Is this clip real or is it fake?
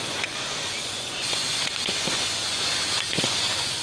fake